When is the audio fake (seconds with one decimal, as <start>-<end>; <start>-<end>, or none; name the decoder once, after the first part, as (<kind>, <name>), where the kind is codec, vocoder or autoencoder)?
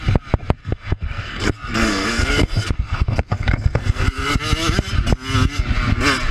0.6-4.4 (codec, SNAC)